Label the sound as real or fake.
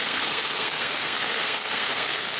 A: fake